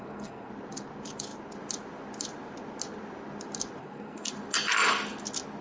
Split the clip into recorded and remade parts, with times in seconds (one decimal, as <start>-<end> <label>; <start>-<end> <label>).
0.0-0.5 remade; 0.5-3.8 recorded; 3.8-4.3 remade; 4.3-5.6 recorded